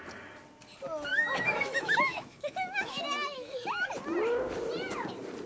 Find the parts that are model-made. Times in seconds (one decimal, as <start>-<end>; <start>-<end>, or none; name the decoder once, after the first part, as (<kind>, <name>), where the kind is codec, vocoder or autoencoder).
1.1-3.9 (autoencoder, DAC-VAE)

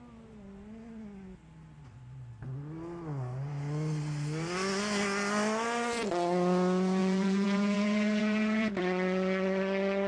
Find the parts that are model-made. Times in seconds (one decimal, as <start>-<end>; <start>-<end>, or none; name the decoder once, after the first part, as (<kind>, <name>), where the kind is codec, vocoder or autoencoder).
7.0-8.8 (vocoder, Vocos)

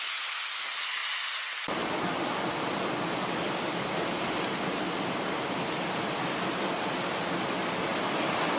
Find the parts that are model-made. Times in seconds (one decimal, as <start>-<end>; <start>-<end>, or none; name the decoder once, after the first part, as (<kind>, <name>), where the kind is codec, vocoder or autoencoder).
none

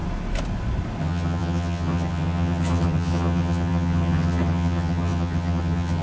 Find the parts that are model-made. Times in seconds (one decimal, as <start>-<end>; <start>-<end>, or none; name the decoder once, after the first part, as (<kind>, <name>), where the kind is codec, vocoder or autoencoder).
1.0-6.0 (vocoder, HiFi-GAN)